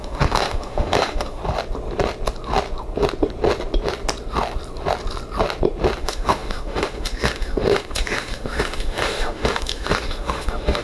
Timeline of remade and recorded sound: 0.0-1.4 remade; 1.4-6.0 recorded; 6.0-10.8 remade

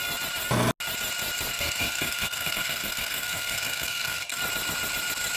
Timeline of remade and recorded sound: 0.0-1.5 recorded; 1.5-4.4 remade; 4.4-5.4 recorded

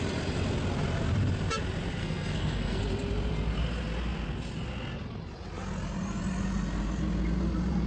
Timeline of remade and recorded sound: 0.0-2.0 recorded; 2.0-2.8 remade; 2.8-7.9 recorded

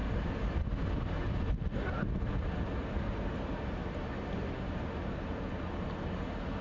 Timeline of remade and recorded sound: 0.0-6.6 recorded